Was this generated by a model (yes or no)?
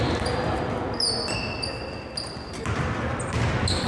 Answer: no